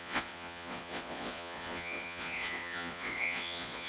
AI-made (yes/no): yes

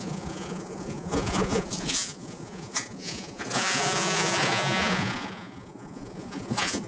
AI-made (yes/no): yes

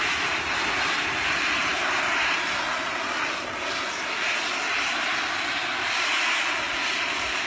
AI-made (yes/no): no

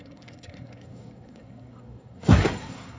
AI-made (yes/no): yes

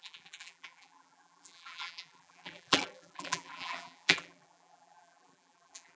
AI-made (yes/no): yes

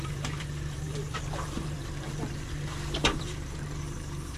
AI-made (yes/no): yes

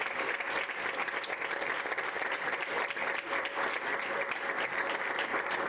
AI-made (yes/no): no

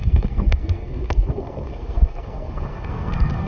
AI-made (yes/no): yes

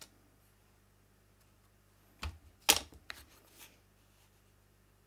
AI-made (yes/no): no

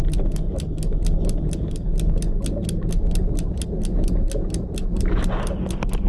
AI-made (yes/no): no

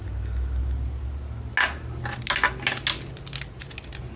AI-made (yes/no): no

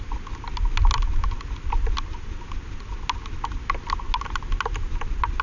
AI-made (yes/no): no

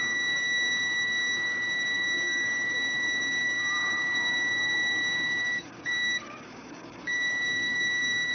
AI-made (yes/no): yes